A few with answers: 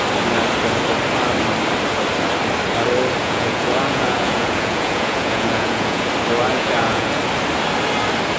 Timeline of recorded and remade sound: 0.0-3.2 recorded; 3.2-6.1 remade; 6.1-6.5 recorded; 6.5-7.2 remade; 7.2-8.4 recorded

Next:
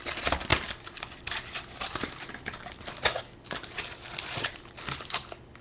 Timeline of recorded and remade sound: 0.0-5.6 recorded

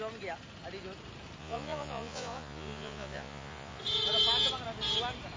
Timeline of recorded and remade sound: 0.0-1.4 recorded; 1.4-3.8 remade; 3.8-5.4 recorded

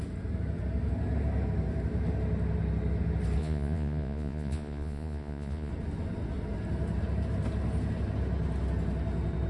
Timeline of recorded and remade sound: 0.0-3.4 recorded; 3.4-5.7 remade; 5.7-9.5 recorded

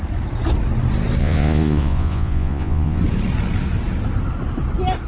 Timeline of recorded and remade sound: 0.0-1.2 recorded; 1.2-3.0 remade; 3.0-5.1 recorded

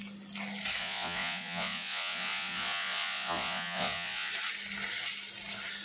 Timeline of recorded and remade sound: 0.0-0.8 recorded; 0.8-4.3 remade; 4.3-5.8 recorded